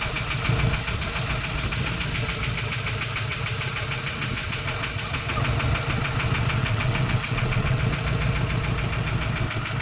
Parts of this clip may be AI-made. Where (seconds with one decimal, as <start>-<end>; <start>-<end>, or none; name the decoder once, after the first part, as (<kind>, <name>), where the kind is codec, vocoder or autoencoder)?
6.6-7.8 (vocoder, WaveNeXt)